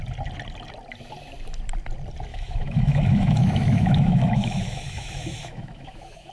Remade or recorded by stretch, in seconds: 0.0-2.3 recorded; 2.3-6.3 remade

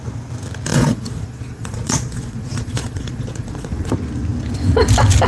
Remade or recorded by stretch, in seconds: 0.0-0.7 recorded; 0.7-3.9 remade; 3.9-5.3 recorded

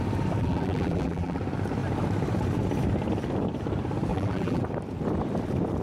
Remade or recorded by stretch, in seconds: 0.0-0.4 recorded; 0.4-1.4 remade; 1.4-4.1 recorded; 4.1-4.6 remade; 4.6-5.8 recorded

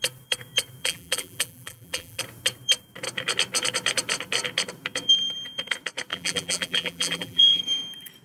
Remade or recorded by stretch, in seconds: 0.0-0.8 recorded; 0.8-2.2 remade; 2.2-6.1 recorded; 6.1-7.6 remade; 7.6-8.2 recorded

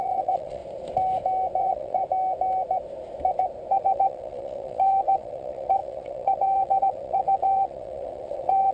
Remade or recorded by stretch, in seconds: 0.0-0.6 remade; 0.6-1.6 recorded; 1.6-2.0 remade; 2.0-3.7 recorded; 3.7-8.7 remade